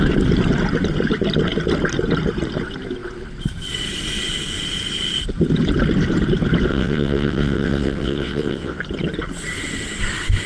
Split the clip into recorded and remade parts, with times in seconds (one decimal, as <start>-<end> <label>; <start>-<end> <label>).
0.0-6.7 recorded; 6.7-8.8 remade; 8.8-10.5 recorded